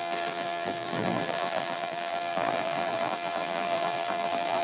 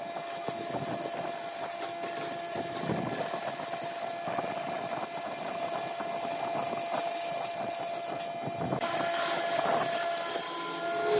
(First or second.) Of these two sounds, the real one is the second